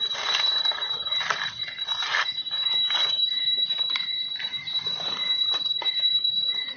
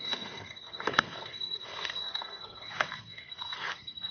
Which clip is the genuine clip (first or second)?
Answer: first